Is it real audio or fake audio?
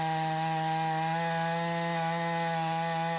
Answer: real